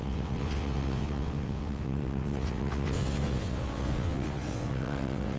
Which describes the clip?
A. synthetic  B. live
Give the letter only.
A